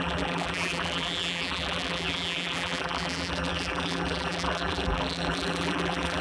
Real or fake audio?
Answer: fake